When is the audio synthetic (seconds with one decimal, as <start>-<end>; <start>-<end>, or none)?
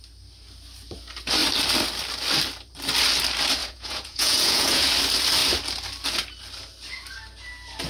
3.6-4.9